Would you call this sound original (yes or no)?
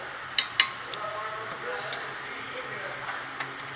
yes